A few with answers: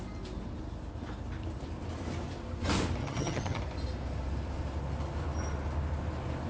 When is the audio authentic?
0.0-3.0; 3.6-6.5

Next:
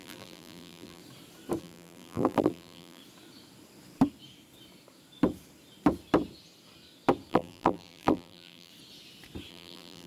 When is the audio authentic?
1.0-1.6; 3.0-7.3; 8.7-9.5

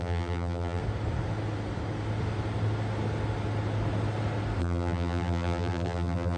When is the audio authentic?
0.8-4.6

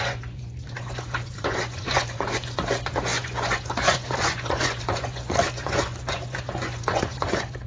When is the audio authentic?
none

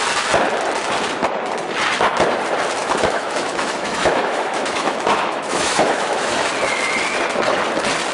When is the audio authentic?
0.0-2.8; 6.5-8.1